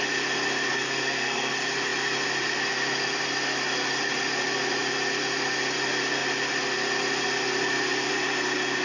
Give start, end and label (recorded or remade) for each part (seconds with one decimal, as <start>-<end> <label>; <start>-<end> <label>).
0.0-0.7 recorded; 0.7-1.5 remade; 1.5-8.8 recorded